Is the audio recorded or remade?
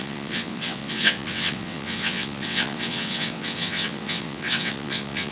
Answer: remade